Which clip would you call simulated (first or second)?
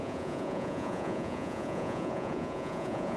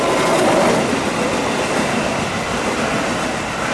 first